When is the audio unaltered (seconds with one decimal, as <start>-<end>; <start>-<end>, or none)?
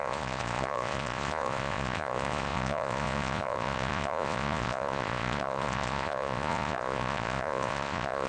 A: none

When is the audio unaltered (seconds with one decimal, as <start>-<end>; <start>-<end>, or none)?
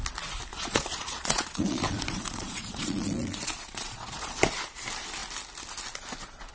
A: 0.0-0.5; 4.4-6.5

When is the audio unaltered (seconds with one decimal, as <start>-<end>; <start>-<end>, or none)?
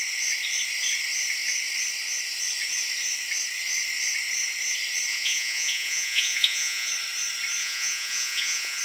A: 0.0-5.1; 6.9-7.6